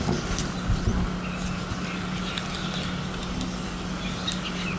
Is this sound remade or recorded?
recorded